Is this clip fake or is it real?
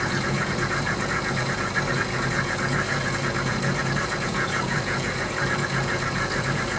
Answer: fake